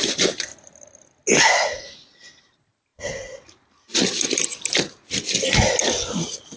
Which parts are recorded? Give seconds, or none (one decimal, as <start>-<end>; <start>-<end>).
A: 0.5-2.4; 2.9-6.6